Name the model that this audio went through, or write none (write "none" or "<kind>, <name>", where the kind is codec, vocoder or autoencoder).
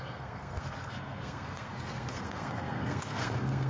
codec, SNAC